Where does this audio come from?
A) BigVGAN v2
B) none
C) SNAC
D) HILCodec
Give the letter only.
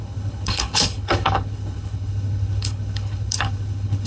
D